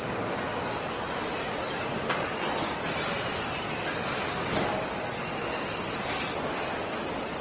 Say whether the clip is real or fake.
real